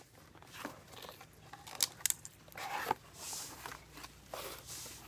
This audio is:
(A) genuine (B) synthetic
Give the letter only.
A